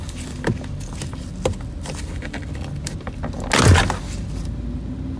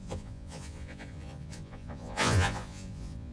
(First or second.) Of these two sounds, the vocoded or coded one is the second